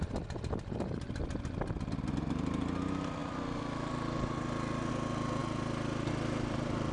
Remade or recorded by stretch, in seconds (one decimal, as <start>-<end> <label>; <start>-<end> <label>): 0.0-6.9 recorded